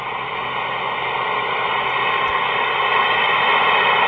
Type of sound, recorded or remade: recorded